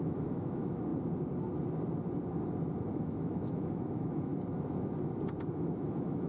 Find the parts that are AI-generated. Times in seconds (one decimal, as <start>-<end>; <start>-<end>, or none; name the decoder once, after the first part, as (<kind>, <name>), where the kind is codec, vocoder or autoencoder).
0.0-0.9 (autoencoder, DAC-VAE); 2.9-4.3; 5.5-6.3